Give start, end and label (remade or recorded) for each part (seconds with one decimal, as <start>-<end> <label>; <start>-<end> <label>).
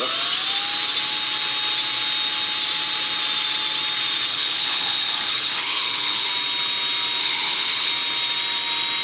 0.0-4.3 recorded; 4.3-6.3 remade; 6.3-7.2 recorded; 7.2-7.9 remade; 7.9-9.0 recorded